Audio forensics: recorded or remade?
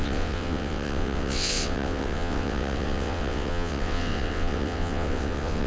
remade